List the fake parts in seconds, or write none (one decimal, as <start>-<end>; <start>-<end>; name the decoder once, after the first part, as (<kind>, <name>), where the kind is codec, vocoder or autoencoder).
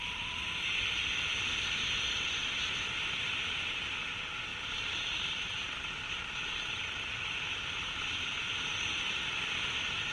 4.5-8.7 (vocoder, BigVGAN v2)